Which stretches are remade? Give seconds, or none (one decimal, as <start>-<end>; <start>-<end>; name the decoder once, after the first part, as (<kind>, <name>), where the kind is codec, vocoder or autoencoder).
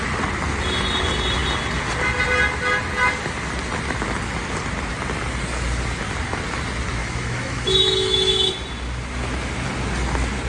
7.0-8.5 (autoencoder, DAC-VAE)